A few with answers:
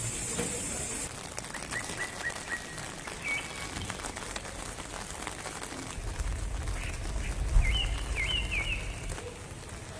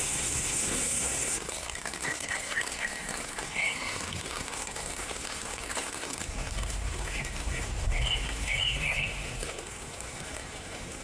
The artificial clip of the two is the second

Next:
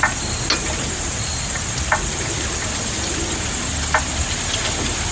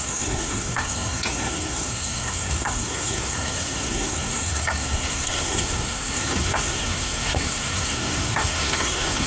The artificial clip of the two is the second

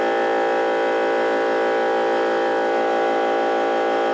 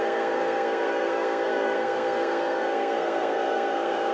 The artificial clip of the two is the second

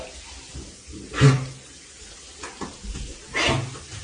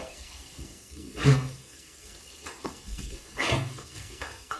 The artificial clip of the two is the second